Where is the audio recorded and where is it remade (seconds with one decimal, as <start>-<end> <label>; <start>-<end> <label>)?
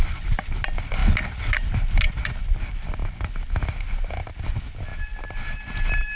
0.0-6.2 recorded